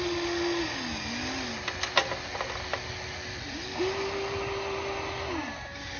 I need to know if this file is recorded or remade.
recorded